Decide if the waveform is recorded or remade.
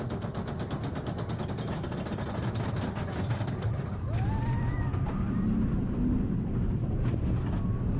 recorded